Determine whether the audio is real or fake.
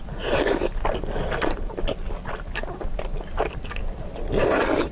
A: real